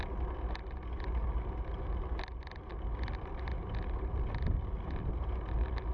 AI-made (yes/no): no